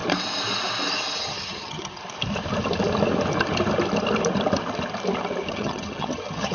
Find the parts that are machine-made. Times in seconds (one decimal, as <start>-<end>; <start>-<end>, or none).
1.2-2.0; 5.5-6.5